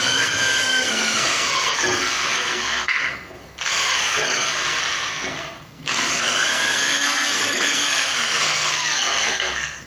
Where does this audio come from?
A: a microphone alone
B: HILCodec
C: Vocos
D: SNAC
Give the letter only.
D